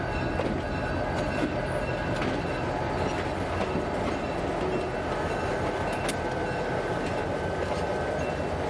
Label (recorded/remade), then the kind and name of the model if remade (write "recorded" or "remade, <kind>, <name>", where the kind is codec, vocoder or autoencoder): recorded